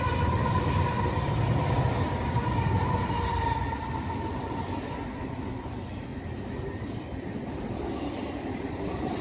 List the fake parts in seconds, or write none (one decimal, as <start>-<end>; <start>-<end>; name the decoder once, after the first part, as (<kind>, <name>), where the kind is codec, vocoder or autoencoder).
0.0-6.1 (vocoder, BigVGAN v2); 6.9-9.2